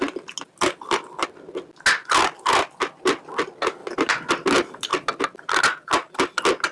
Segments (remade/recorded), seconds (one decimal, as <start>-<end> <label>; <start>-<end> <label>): 0.0-6.7 recorded